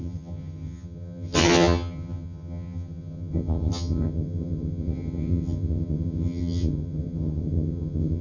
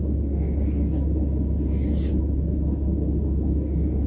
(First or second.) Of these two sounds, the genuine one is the second